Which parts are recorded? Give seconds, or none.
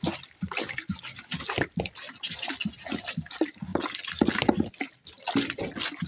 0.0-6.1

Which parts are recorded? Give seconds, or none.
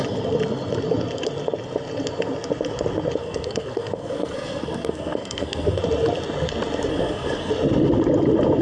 0.0-3.2; 5.8-6.9; 7.5-8.6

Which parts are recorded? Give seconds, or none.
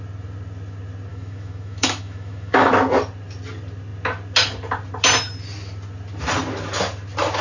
0.0-1.1; 2.7-7.4